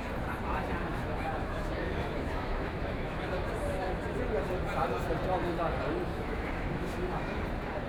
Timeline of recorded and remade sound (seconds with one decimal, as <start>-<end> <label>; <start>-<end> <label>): 0.0-0.9 recorded; 0.9-4.0 remade; 4.0-6.1 recorded; 6.1-7.4 remade; 7.4-7.9 recorded